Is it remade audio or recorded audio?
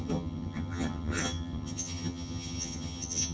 remade